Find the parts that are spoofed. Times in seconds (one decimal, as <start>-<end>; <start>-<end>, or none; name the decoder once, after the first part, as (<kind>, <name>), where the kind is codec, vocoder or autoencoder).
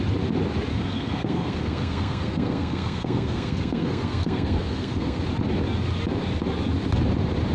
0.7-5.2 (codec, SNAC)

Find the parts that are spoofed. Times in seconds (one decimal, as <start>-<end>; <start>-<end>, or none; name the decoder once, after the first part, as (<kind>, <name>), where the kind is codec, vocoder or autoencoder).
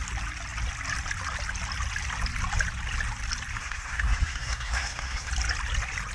3.6-5.3 (codec, SNAC)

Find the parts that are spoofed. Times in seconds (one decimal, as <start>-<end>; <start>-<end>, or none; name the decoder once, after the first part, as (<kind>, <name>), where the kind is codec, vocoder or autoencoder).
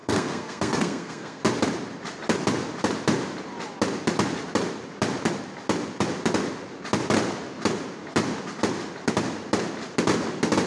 0.0-1.4 (codec, SNAC)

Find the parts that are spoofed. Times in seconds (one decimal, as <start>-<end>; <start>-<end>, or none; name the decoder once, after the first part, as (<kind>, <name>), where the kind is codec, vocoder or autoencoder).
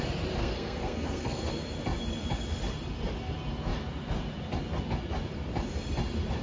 0.4-1.5 (codec, SNAC)